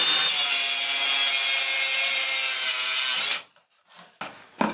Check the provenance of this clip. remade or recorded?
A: recorded